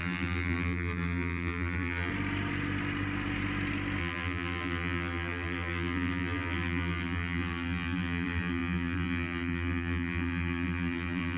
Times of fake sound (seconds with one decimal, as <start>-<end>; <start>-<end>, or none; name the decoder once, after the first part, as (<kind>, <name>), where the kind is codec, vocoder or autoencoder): 0.0-2.1 (vocoder, BigVGAN v2); 4.0-11.4